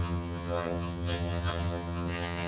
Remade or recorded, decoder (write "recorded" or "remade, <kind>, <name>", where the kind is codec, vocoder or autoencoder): remade, vocoder, HiFi-GAN